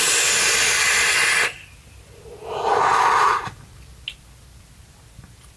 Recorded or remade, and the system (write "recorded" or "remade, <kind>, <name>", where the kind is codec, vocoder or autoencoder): recorded